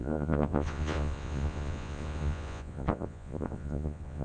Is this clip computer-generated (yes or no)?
yes